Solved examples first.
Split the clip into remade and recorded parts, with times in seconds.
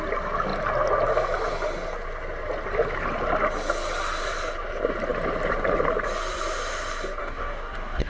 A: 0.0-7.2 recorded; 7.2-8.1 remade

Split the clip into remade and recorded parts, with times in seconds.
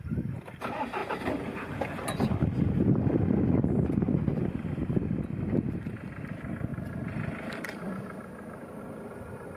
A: 0.0-1.0 remade; 1.0-6.2 recorded; 6.2-9.6 remade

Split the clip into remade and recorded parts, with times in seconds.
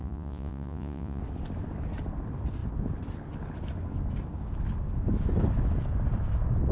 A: 0.0-1.2 remade; 1.2-6.7 recorded